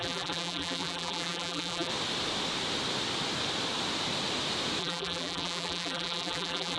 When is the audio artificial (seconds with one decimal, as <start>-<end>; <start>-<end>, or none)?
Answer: 0.0-1.9; 4.8-6.8